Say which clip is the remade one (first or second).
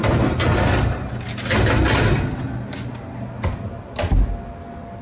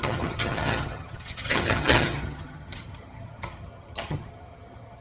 second